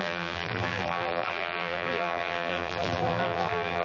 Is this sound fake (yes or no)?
yes